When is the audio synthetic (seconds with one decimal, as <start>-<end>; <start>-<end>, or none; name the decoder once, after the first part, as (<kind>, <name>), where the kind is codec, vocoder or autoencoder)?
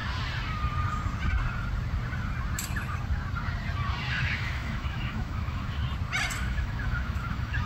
4.1-5.8 (autoencoder, DAC-VAE); 6.4-7.7